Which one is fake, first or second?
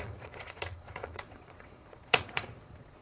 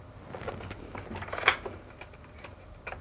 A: first